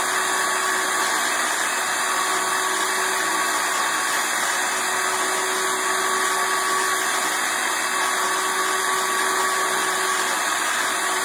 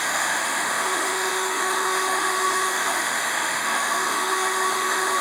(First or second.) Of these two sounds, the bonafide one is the first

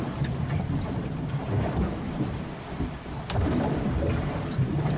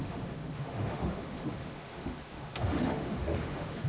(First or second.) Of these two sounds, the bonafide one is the first